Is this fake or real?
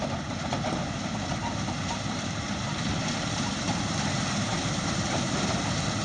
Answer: fake